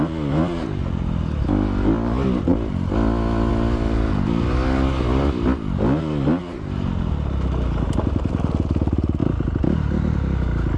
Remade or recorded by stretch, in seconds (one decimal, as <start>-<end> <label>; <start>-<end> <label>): 0.0-10.8 recorded